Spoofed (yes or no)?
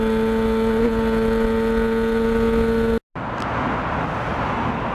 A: no